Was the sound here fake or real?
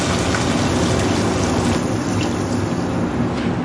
real